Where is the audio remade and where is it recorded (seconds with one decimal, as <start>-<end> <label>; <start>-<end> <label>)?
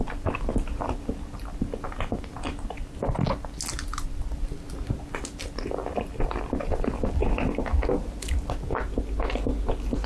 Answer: 0.0-10.1 recorded